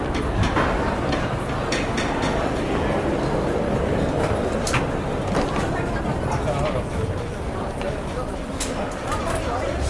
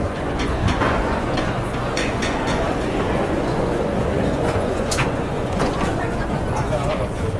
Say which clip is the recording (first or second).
first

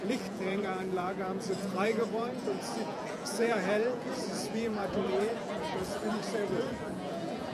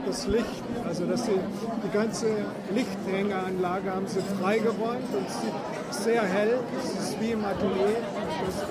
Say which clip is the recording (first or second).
second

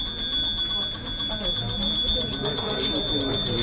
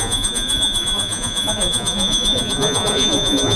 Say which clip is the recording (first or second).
first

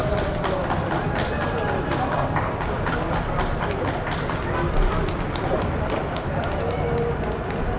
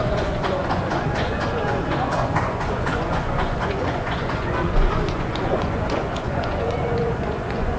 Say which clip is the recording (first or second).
first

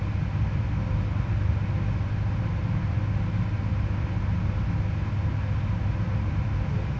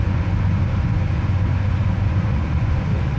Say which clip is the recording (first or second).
first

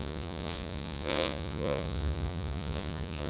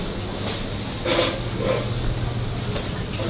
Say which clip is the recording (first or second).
second